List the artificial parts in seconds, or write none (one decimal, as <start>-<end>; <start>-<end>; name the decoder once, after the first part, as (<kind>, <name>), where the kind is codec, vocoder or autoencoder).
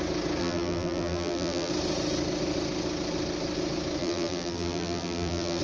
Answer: 0.4-1.7 (vocoder, BigVGAN v2); 4.0-5.6